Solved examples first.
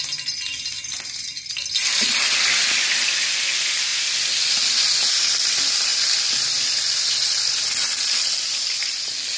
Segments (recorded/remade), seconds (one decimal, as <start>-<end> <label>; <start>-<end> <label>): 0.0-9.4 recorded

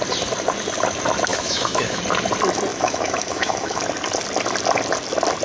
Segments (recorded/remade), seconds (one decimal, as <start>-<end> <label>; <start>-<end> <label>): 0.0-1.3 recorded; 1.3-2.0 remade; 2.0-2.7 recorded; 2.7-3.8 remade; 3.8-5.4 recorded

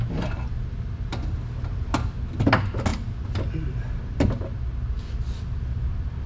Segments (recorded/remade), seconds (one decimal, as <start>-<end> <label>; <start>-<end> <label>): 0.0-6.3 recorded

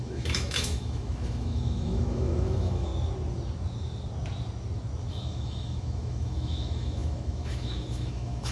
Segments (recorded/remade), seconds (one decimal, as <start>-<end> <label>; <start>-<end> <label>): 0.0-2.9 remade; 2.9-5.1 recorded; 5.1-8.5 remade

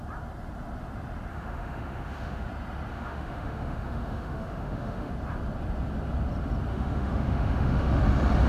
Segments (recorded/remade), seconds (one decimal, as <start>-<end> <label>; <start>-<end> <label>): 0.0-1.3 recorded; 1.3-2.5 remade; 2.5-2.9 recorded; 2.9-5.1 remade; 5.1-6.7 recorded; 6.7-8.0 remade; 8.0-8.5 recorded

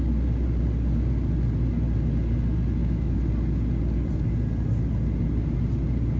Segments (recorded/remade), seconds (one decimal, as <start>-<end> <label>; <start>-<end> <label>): 0.0-2.8 recorded; 2.8-3.3 remade; 3.3-6.2 recorded